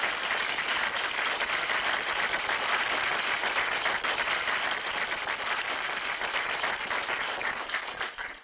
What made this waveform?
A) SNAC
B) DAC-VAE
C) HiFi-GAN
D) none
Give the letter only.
D